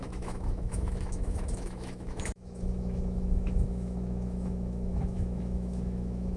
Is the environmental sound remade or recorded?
remade